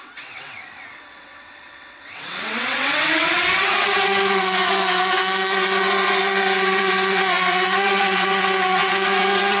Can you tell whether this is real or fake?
fake